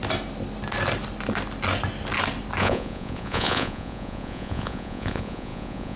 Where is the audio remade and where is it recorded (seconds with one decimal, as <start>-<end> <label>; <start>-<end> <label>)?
0.0-2.6 recorded; 2.6-6.0 remade